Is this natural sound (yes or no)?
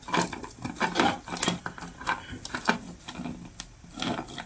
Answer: yes